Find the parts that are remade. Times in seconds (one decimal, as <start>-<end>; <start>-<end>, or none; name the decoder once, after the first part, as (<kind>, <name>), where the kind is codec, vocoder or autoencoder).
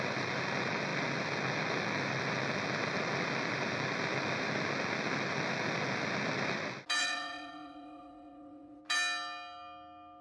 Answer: 7.0-8.8 (vocoder, WaveNeXt)